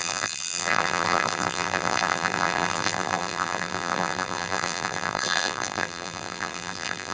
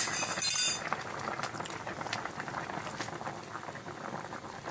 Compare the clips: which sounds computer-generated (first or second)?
first